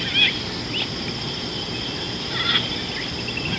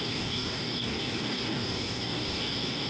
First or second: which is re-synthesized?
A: second